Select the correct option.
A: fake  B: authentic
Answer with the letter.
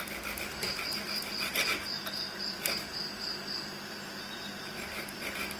B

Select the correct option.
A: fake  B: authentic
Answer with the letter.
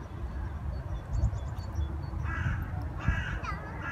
B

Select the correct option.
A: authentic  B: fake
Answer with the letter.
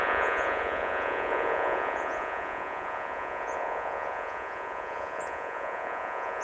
B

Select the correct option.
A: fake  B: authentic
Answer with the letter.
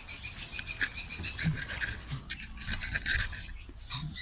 B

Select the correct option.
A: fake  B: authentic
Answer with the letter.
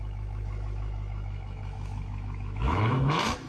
A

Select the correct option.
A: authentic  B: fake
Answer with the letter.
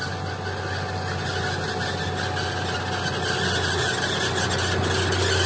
A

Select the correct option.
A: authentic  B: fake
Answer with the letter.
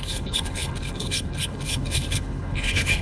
B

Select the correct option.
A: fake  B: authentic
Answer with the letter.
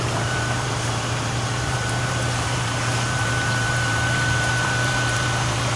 A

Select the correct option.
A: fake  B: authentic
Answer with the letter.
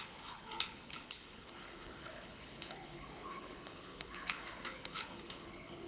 A